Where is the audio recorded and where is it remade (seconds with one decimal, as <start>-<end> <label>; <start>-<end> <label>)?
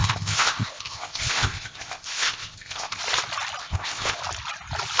0.0-3.0 remade; 3.0-3.6 recorded; 3.6-4.2 remade; 4.2-5.0 recorded